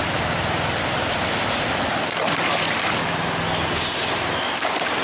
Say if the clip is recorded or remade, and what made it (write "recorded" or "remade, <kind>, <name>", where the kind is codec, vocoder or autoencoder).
recorded